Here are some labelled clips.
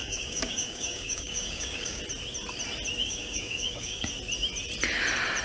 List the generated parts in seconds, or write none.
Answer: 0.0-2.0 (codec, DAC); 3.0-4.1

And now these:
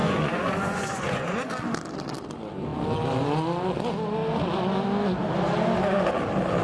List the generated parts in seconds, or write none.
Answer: 0.0-1.5 (vocoder, Vocos)

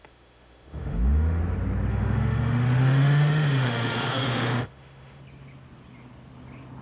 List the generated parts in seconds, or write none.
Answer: 0.0-1.4 (autoencoder, DAC-VAE); 1.9-5.2

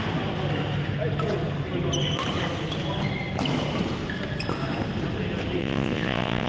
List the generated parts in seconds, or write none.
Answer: 5.6-6.5 (vocoder, Vocos)